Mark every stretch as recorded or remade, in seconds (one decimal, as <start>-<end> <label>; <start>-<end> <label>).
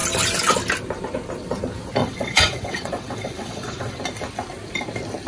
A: 0.0-2.0 recorded; 2.0-4.0 remade; 4.0-5.3 recorded